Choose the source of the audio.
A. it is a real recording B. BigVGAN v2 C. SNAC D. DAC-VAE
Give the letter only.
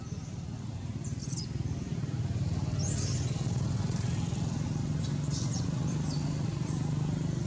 A